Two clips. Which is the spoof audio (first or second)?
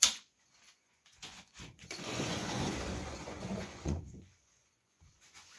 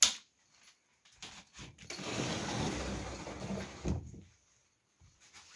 first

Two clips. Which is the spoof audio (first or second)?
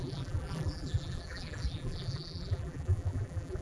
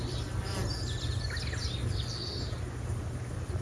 first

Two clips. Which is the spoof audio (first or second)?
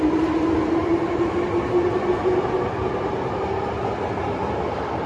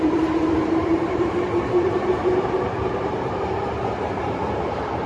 second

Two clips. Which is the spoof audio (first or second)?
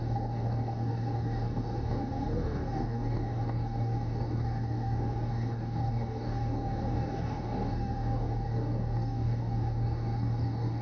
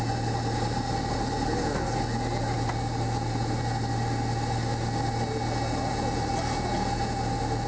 first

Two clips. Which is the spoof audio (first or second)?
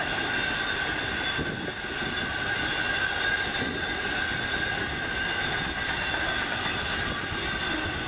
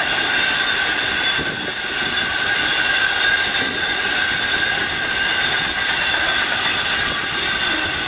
second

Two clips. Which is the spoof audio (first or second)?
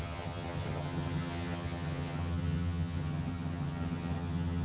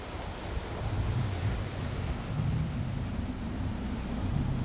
first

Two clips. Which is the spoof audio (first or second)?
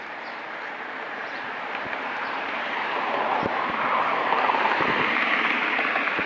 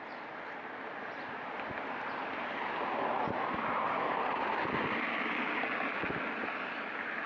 first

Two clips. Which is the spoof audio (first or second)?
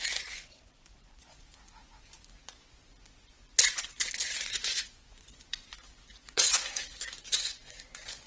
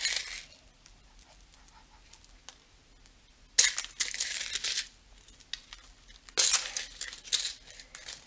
first